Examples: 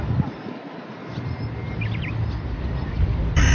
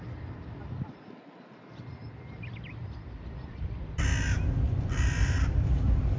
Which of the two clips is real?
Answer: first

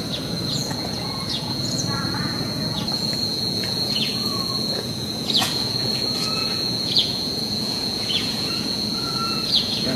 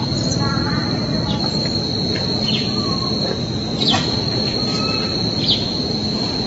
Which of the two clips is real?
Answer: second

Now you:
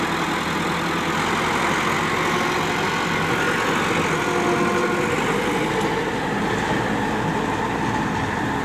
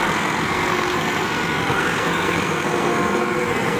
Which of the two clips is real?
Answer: first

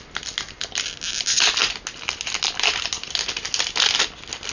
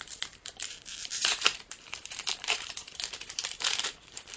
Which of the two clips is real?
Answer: first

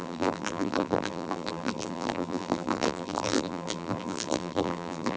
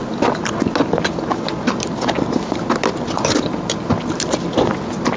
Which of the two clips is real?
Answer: second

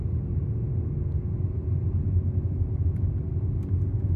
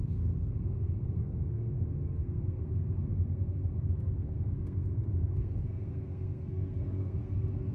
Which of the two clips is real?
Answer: first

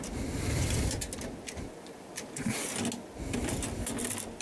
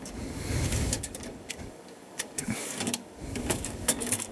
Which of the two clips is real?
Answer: first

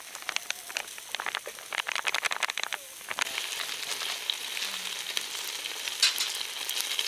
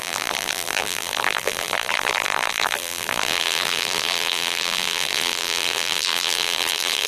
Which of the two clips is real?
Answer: first